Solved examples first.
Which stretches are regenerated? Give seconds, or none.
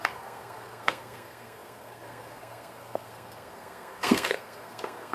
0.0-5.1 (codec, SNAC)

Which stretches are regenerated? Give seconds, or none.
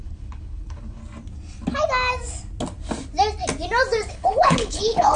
0.0-1.0 (codec, HILCodec); 4.1-5.2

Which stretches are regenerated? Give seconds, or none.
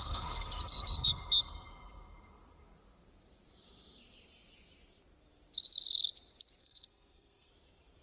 0.0-1.1 (codec, SNAC); 6.6-7.5